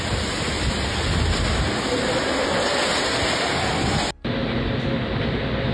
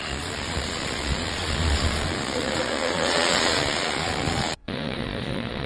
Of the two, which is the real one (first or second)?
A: first